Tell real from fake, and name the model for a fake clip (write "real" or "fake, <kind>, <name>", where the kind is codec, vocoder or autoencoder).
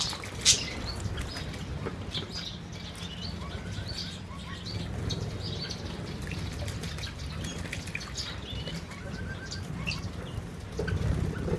real